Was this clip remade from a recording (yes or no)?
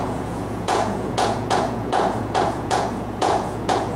yes